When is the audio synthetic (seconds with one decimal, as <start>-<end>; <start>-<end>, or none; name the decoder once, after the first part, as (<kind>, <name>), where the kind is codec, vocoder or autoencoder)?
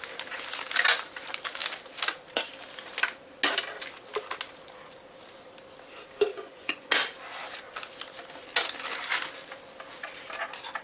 6.3-6.9 (vocoder, Vocos)